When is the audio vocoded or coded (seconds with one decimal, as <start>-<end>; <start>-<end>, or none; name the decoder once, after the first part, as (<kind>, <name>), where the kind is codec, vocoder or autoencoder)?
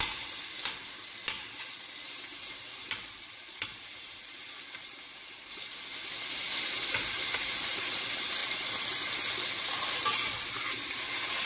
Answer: none